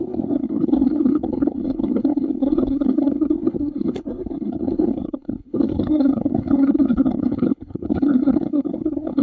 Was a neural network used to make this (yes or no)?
yes